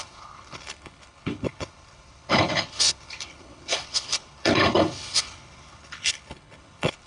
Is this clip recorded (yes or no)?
no